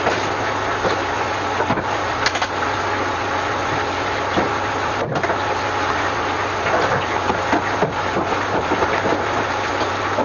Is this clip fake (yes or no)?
no